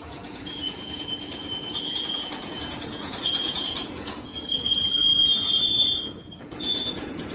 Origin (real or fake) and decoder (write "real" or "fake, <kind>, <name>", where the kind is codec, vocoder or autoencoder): fake, vocoder, Vocos